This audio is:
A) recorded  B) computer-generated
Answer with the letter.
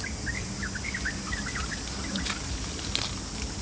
A